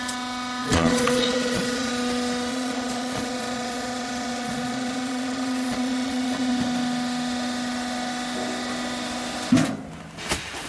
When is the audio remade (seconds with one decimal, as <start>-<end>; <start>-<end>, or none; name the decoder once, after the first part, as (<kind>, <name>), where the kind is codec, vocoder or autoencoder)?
0.6-1.9 (vocoder, Vocos); 2.5-6.5

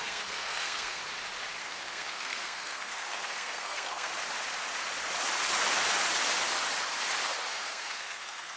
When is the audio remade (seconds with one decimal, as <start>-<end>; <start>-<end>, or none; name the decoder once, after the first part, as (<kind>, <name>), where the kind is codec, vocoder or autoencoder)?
0.0-1.0 (codec, SNAC); 1.6-4.1; 7.5-8.6

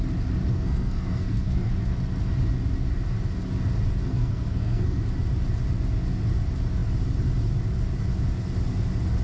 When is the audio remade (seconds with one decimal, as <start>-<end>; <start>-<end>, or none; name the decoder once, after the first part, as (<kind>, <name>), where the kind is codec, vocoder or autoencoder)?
0.5-1.7 (codec, SNAC); 4.1-5.0